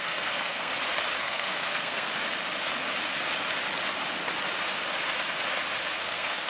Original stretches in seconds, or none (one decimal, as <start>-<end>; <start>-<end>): 0.7-1.2; 2.1-6.0